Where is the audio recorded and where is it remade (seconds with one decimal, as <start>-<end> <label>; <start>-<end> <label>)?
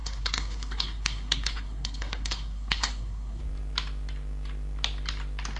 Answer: 0.0-3.4 remade; 3.4-5.6 recorded